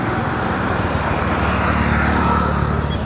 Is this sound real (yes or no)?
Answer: yes